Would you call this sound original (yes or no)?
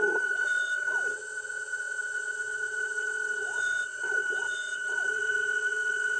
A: no